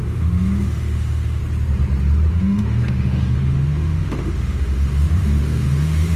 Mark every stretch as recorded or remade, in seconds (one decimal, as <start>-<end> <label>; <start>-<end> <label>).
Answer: 0.0-1.4 remade; 1.4-2.3 recorded; 2.3-6.2 remade